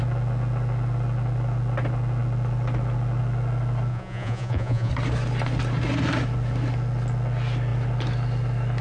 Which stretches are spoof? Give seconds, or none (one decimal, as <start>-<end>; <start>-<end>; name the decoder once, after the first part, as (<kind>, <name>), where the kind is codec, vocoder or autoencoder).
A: 3.9-4.9 (vocoder, Vocos)